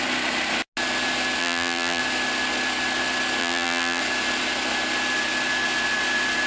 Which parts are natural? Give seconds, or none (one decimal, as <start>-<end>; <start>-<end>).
0.0-1.4; 2.0-3.4; 4.0-6.5